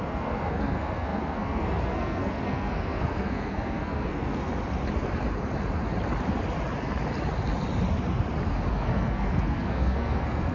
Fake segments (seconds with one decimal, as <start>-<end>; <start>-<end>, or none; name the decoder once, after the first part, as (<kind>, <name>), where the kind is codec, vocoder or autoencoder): 0.0-4.5 (codec, SNAC); 8.7-10.5